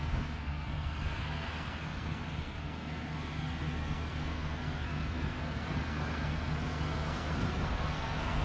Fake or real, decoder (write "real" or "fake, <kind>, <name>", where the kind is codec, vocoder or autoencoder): fake, codec, SNAC